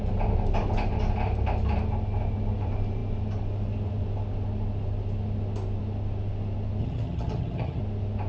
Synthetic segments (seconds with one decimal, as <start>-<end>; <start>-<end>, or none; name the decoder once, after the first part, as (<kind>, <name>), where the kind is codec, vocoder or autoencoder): 6.8-7.8 (vocoder, HiFi-GAN)